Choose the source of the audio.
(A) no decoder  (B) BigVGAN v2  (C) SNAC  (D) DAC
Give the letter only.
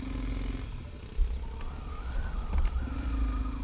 A